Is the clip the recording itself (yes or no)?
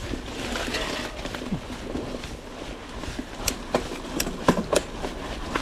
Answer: yes